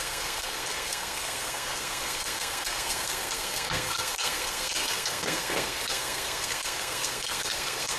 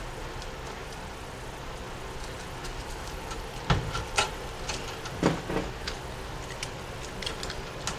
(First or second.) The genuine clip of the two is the second